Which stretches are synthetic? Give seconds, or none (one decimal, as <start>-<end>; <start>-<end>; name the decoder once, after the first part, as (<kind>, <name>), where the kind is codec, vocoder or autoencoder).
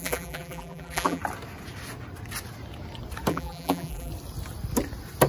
0.0-1.2 (vocoder, BigVGAN v2); 3.3-4.1